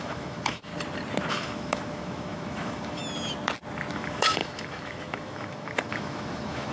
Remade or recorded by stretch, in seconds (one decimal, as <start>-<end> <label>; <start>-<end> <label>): 0.0-0.7 remade; 0.7-1.3 recorded; 1.3-3.0 remade; 3.0-3.9 recorded; 3.9-6.7 remade